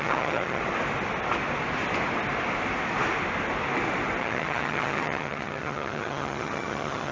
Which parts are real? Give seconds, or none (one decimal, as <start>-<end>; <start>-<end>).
0.6-4.2